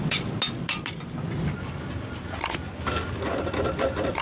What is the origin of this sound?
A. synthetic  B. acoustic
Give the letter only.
B